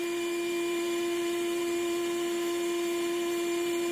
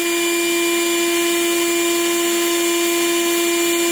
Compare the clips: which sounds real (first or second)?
second